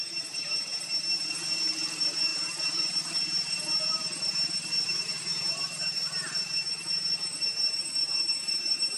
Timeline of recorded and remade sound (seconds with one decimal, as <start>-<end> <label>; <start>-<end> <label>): 0.0-0.7 remade; 0.7-1.3 recorded; 1.3-9.0 remade